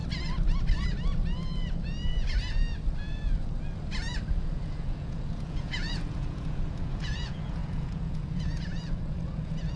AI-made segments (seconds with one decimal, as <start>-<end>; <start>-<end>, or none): 4.3-9.8

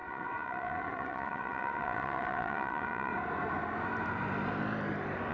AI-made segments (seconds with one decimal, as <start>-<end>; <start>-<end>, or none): 0.0-3.1